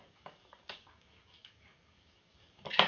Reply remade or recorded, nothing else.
remade